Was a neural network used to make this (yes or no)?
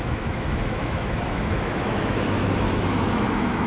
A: yes